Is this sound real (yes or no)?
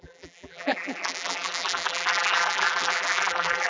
no